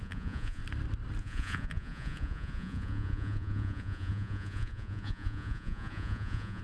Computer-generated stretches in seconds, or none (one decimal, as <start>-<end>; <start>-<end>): 0.0-0.6; 1.2-6.6